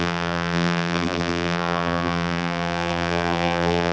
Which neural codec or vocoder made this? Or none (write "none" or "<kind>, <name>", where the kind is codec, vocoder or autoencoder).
vocoder, BigVGAN v2